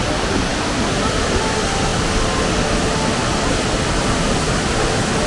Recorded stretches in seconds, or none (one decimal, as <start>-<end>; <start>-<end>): 0.0-5.3